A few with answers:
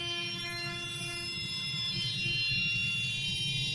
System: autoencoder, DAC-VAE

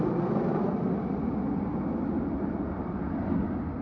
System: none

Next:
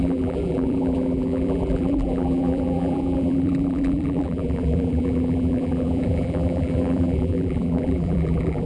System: vocoder, BigVGAN v2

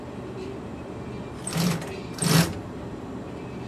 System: none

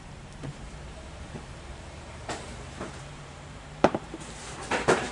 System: vocoder, BigVGAN v2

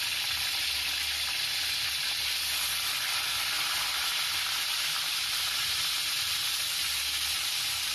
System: none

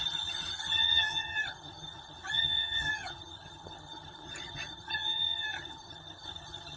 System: vocoder, HiFi-GAN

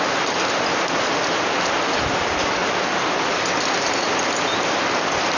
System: none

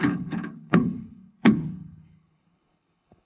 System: codec, HILCodec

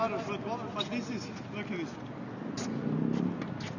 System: none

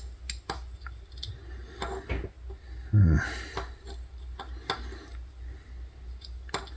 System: none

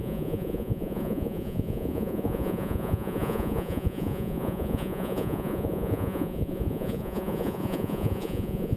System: vocoder, Vocos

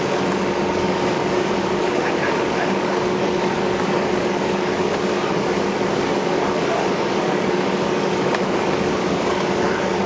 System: codec, DAC